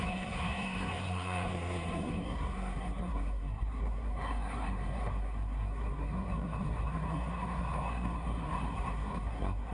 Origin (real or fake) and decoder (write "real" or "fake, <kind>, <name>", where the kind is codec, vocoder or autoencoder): fake, codec, SNAC